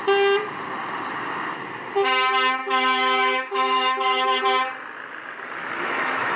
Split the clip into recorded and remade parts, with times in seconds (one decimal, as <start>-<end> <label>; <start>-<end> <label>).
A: 0.0-2.6 recorded; 2.6-4.4 remade; 4.4-5.6 recorded; 5.6-6.4 remade